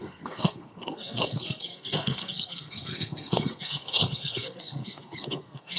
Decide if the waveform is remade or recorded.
remade